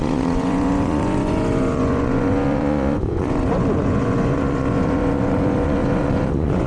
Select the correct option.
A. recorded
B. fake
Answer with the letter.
B